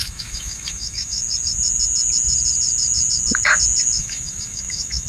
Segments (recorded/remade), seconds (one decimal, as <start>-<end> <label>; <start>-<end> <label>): 0.0-1.2 remade; 1.2-4.0 recorded; 4.0-5.1 remade